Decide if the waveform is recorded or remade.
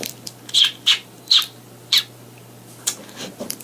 remade